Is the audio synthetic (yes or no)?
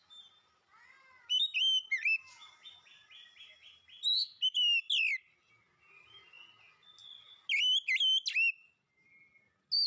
no